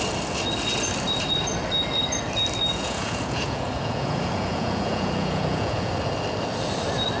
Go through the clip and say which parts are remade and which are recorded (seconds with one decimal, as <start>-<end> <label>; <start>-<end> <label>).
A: 0.0-2.7 recorded; 2.7-5.9 remade; 5.9-7.2 recorded